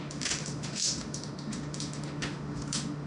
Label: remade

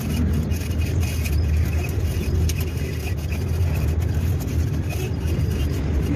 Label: recorded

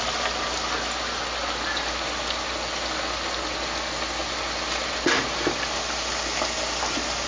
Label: recorded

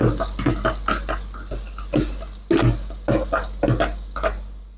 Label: recorded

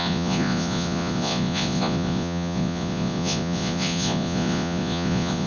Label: remade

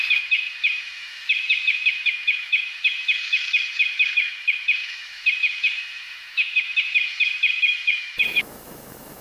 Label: remade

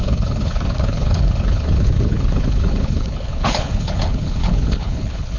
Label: remade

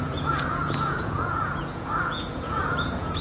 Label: remade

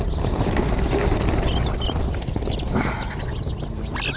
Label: recorded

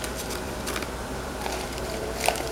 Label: remade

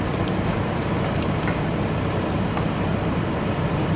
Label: remade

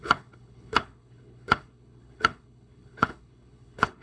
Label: remade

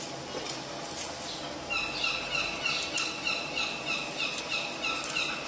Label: recorded